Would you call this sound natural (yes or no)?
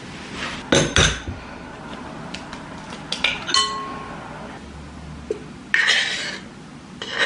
yes